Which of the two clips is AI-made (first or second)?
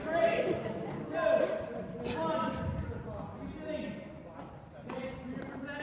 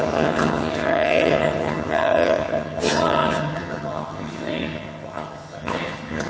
second